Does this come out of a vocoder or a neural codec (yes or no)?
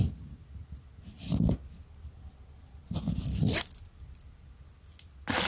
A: no